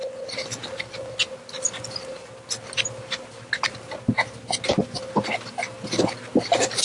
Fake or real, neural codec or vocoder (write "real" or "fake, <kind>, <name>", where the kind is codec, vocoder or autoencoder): real